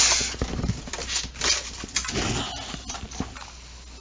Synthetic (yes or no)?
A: no